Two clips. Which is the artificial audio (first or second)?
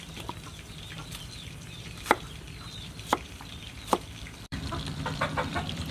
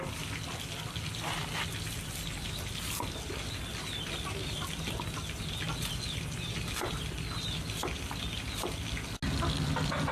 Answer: first